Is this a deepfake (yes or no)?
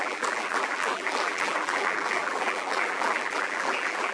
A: yes